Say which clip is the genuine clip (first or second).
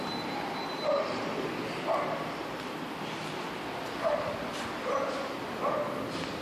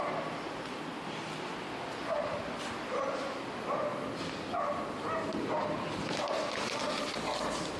second